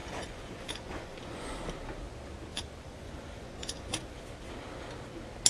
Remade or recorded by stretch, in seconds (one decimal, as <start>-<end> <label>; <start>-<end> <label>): 0.0-1.6 remade; 1.6-2.5 recorded; 2.5-4.2 remade; 4.2-5.5 recorded